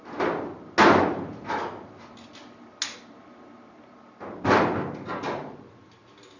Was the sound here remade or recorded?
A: recorded